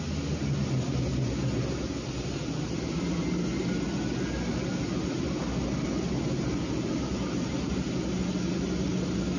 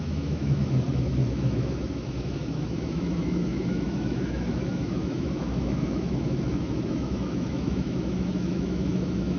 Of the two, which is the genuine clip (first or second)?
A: first